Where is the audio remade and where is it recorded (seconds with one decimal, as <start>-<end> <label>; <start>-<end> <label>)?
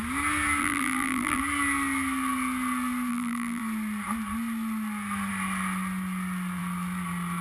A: 0.0-0.6 recorded; 0.6-1.4 remade; 1.4-3.1 recorded; 3.1-3.6 remade; 3.6-7.4 recorded